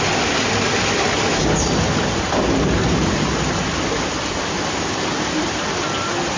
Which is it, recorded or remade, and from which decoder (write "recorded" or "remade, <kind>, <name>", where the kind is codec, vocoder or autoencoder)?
recorded